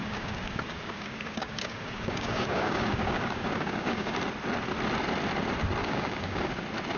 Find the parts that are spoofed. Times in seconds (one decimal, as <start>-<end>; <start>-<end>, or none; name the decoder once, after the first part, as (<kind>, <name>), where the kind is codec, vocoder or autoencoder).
0.0-4.2 (codec, DAC); 5.8-6.5